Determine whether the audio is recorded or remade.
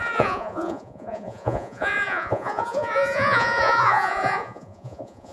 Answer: remade